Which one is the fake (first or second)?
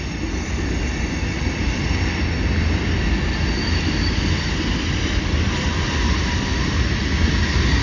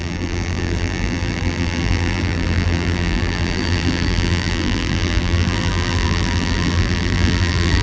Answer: second